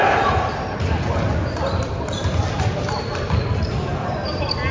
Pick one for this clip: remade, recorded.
remade